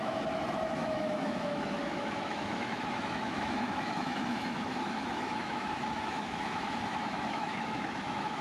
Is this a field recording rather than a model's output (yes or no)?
no